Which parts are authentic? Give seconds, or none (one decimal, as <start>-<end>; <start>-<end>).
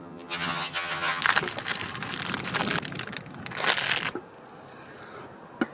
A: 1.2-5.7